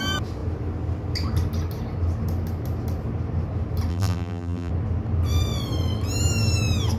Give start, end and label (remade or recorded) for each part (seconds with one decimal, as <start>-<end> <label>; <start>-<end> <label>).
0.0-3.9 recorded; 3.9-4.7 remade; 4.7-7.0 recorded